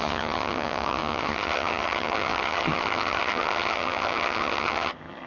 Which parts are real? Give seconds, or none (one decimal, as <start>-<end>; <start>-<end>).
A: none